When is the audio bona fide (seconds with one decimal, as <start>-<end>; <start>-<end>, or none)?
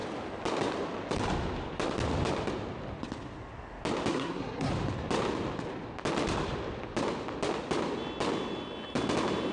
0.0-4.1; 4.7-9.5